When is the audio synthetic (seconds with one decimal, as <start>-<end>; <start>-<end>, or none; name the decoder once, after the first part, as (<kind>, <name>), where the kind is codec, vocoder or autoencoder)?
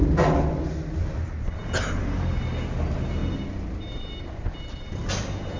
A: none